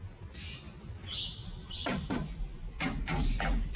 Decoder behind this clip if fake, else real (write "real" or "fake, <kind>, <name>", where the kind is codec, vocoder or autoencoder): real